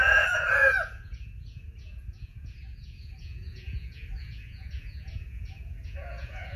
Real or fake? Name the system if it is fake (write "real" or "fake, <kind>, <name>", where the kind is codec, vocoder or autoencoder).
fake, vocoder, Vocos